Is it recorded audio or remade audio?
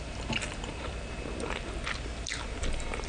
recorded